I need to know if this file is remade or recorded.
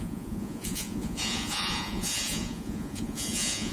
remade